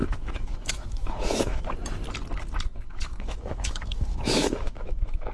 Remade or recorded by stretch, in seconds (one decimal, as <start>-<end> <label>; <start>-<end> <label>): 0.0-1.6 remade; 1.6-2.7 recorded; 2.7-5.3 remade